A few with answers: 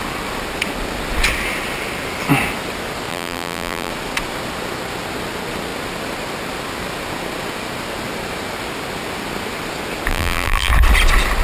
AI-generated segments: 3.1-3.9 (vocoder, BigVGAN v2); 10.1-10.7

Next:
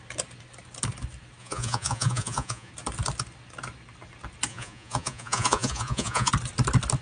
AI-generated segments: 1.4-2.7 (vocoder, Vocos); 4.5-6.3

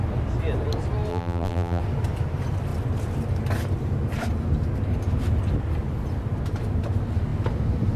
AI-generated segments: 1.1-1.8 (vocoder, BigVGAN v2)

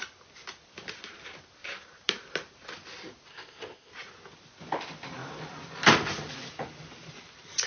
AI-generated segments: 3.3-3.9 (codec, ZipCodec)

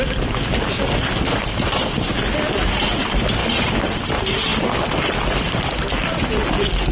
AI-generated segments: none

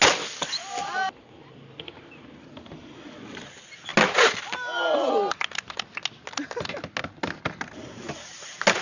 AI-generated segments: none